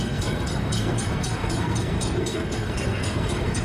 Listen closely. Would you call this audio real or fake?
fake